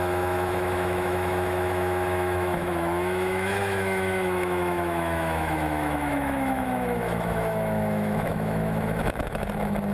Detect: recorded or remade remade